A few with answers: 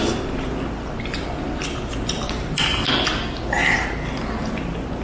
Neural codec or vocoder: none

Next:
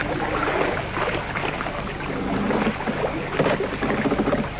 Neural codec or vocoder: none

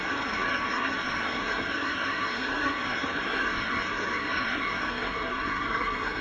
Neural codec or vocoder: codec, SNAC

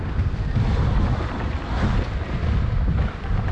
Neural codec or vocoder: none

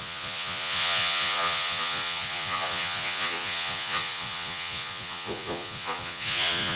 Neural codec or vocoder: vocoder, Vocos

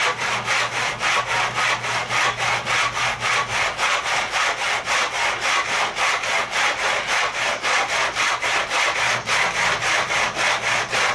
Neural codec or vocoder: none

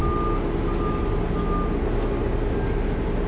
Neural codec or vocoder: none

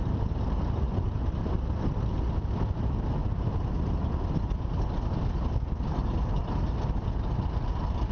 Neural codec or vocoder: none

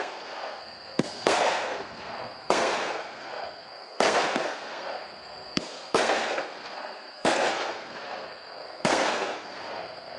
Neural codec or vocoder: codec, SNAC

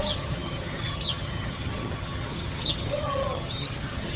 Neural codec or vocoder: vocoder, HiFi-GAN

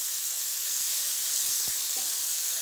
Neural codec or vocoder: codec, SNAC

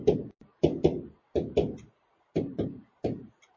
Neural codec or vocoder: vocoder, BigVGAN v2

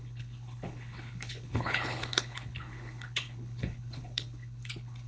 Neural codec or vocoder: codec, HILCodec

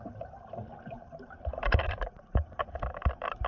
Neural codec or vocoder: vocoder, BigVGAN v2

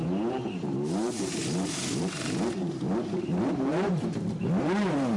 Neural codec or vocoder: vocoder, BigVGAN v2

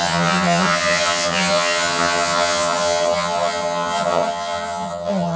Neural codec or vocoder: vocoder, HiFi-GAN